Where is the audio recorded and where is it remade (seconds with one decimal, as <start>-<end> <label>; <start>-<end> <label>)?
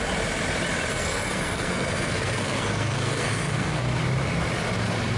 0.0-0.9 recorded; 0.9-4.0 remade; 4.0-5.2 recorded